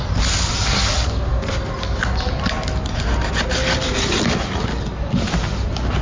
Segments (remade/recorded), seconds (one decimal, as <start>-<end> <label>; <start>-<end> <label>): 0.0-6.0 recorded